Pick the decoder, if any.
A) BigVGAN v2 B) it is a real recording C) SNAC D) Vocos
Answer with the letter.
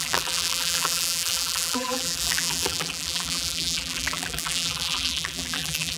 A